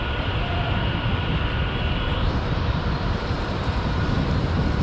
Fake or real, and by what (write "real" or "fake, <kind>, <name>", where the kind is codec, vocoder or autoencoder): fake, vocoder, BigVGAN v2